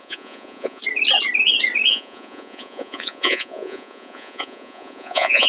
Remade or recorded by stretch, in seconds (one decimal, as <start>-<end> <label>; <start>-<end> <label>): 0.0-0.8 remade; 0.8-1.9 recorded; 1.9-5.5 remade